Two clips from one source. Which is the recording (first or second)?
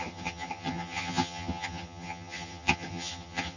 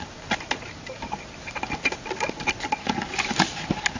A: second